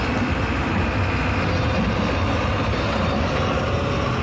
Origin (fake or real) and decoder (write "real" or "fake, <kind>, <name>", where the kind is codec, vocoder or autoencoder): real